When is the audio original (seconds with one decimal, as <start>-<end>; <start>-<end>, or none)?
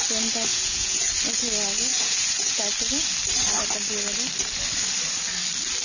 0.0-0.5; 1.1-1.9; 2.6-5.8